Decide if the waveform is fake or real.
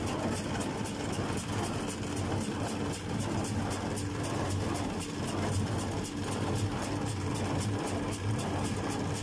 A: real